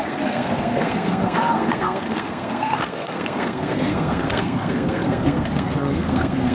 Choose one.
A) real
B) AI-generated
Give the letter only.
B